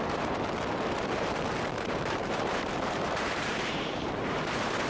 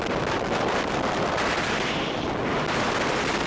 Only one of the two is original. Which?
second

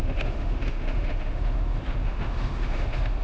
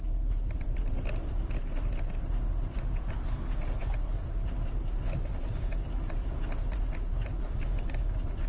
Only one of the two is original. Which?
second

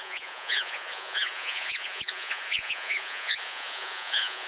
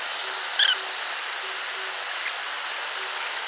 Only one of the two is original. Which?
second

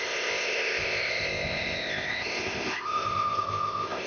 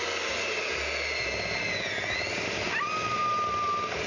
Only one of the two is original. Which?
second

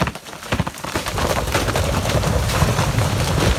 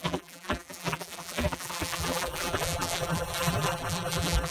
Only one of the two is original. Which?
first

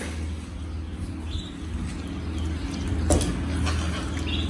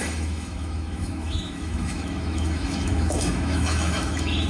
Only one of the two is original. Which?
first